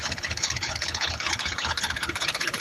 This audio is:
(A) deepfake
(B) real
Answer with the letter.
A